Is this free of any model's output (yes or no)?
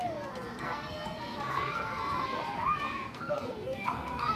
no